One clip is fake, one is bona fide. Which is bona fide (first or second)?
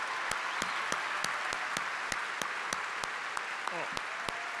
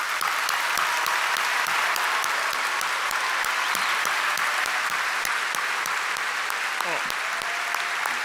first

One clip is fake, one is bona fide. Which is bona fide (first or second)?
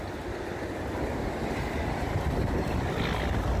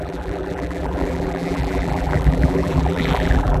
first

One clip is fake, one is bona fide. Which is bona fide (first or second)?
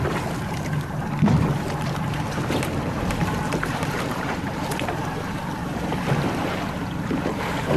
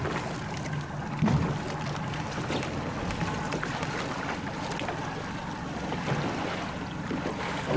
second